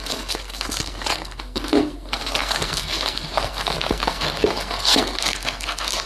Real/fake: fake